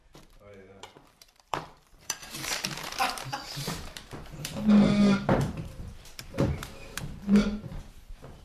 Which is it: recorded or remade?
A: remade